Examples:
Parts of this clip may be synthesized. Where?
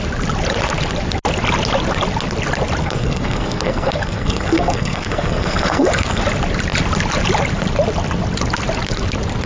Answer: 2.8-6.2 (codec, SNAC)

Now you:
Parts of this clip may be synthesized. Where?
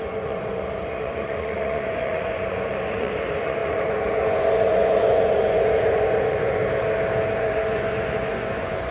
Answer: 0.0-6.6 (vocoder, Vocos); 7.4-8.9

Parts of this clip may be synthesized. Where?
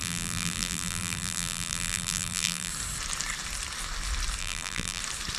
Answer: 0.0-2.7 (vocoder, BigVGAN v2); 4.4-5.0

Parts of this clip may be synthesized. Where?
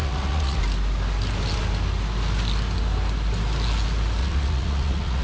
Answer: 0.0-0.6 (vocoder, Vocos); 4.2-5.2